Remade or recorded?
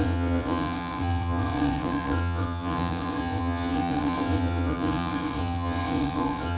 remade